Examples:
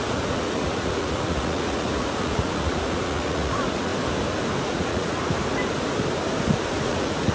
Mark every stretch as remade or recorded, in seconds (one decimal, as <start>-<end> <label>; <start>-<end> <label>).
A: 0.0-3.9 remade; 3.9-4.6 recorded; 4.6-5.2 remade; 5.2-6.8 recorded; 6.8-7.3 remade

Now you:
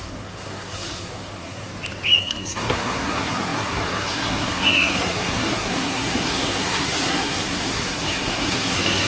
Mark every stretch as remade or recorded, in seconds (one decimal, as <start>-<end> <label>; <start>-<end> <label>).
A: 0.0-1.7 remade; 1.7-2.2 recorded; 2.2-9.1 remade

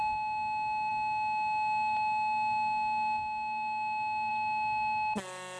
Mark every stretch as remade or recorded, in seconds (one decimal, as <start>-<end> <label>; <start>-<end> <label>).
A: 0.0-5.6 recorded

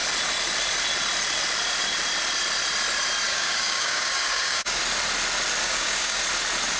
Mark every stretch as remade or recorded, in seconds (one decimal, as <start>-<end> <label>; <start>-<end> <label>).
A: 0.0-3.3 recorded; 3.3-4.8 remade; 4.8-5.6 recorded; 5.6-6.2 remade; 6.2-6.8 recorded

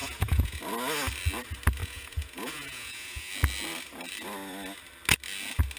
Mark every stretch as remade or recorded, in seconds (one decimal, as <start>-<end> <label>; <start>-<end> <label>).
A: 0.0-0.6 remade; 0.6-1.8 recorded; 1.8-3.3 remade; 3.3-5.8 recorded

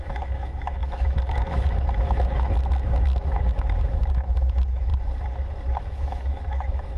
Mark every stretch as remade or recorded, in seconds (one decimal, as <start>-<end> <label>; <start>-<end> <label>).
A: 0.0-4.9 remade; 4.9-5.8 recorded; 5.8-7.0 remade

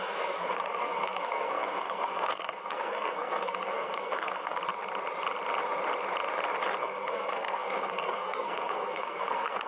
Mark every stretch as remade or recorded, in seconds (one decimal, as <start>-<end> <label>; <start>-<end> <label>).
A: 0.0-4.6 remade; 4.6-6.8 recorded; 6.8-9.7 remade